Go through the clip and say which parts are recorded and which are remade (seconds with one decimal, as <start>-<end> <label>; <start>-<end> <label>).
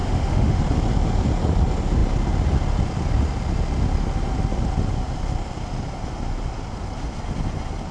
0.0-0.6 remade; 0.6-7.9 recorded